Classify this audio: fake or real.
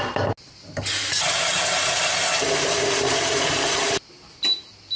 real